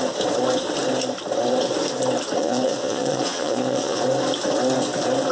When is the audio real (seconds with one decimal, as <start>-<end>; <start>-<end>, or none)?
0.0-2.4; 4.0-5.3